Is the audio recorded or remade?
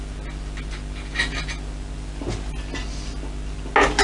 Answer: recorded